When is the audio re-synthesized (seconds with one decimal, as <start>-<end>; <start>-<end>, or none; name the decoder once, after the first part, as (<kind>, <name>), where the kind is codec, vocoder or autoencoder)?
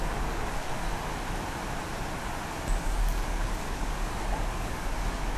0.0-0.7 (codec, DAC); 2.8-5.4